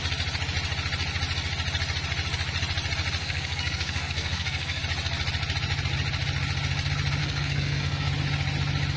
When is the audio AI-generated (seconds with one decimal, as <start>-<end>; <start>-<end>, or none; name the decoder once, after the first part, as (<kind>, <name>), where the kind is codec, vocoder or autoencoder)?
3.2-4.8 (codec, SNAC); 7.2-8.1